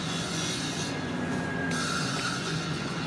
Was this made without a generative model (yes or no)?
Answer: no